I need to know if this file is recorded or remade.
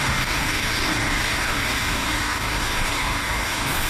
remade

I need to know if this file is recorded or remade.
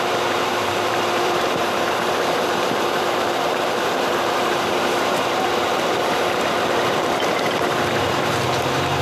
remade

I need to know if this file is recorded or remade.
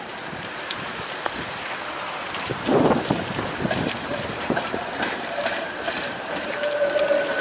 remade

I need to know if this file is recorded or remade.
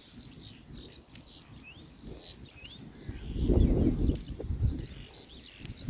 recorded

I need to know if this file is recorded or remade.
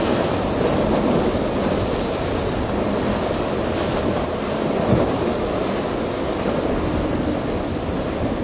recorded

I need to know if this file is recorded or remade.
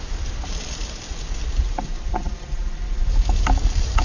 recorded